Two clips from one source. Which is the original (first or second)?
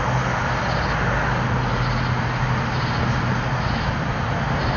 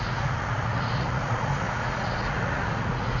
first